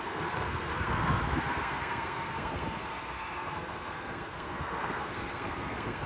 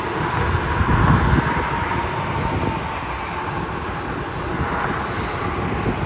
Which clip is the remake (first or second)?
first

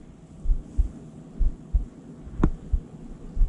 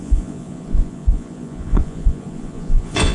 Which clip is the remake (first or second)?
second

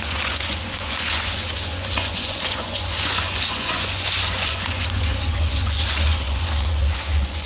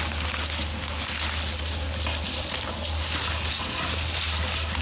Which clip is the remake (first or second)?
first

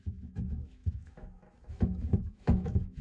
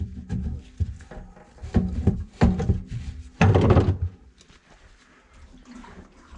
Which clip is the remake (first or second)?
first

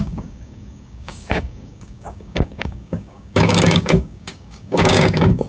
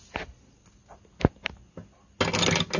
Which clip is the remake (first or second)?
first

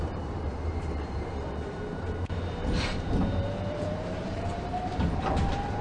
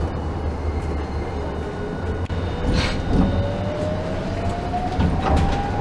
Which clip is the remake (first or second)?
first